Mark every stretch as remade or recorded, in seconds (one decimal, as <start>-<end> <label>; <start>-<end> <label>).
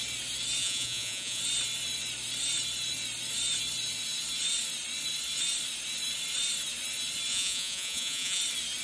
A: 0.0-0.6 recorded; 0.6-1.4 remade; 1.4-7.3 recorded; 7.3-8.4 remade; 8.4-8.8 recorded